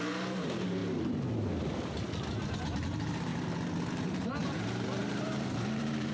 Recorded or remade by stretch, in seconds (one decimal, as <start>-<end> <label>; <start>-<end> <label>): 0.0-0.8 remade; 0.8-2.5 recorded; 2.5-3.3 remade; 3.3-3.9 recorded; 3.9-6.1 remade